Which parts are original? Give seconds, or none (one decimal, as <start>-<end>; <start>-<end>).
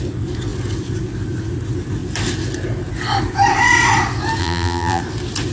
0.0-4.4; 5.0-5.5